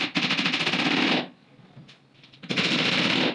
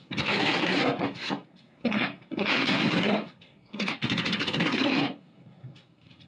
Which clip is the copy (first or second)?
second